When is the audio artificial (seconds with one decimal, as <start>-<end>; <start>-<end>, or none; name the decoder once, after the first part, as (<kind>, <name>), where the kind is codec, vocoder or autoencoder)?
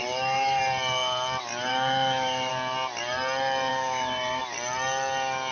0.0-0.6 (autoencoder, DAC-VAE); 1.7-2.5; 3.7-4.4